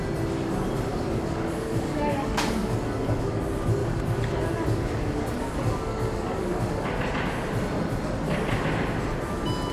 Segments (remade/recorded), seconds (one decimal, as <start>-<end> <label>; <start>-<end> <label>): 0.0-0.9 recorded; 0.9-3.4 remade; 3.4-3.8 recorded; 3.8-7.0 remade; 7.0-9.7 recorded